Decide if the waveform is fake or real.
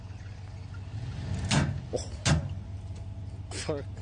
real